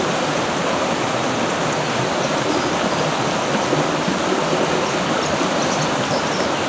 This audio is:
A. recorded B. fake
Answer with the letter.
A